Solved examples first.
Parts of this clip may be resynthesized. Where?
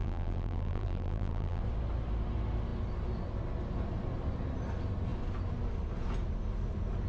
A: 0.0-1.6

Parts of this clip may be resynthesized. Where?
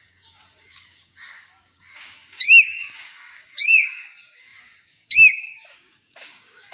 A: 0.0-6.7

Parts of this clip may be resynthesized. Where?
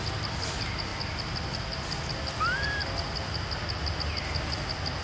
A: none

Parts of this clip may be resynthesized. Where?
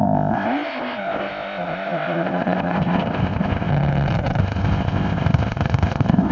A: 0.0-3.7; 4.4-6.3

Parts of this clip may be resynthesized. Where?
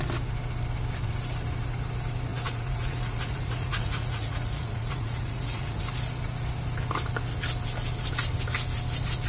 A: 2.3-5.8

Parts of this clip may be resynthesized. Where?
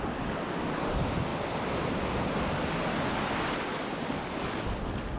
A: 1.3-1.8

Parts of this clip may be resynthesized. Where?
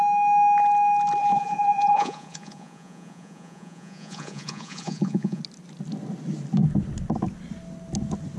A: 1.2-5.4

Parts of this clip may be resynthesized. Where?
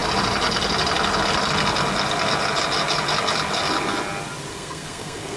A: 4.5-5.4